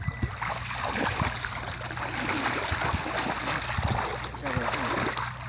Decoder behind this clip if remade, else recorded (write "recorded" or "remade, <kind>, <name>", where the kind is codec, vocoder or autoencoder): recorded